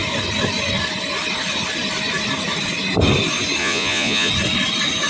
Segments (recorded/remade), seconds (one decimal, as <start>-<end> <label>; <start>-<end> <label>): 0.0-3.6 recorded; 3.6-4.3 remade; 4.3-5.1 recorded